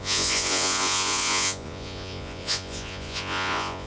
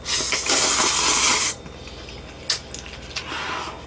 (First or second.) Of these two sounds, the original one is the second